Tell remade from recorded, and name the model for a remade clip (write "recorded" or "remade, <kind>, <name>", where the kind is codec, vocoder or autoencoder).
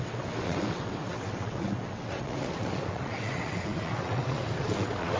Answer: remade, vocoder, WaveNeXt